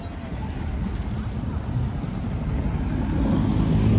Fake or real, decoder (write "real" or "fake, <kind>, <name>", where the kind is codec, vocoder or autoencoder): real